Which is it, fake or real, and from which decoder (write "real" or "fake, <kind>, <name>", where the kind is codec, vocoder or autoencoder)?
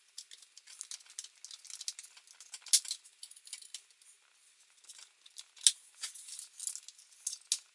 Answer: real